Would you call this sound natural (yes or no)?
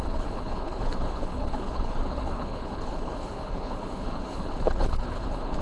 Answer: no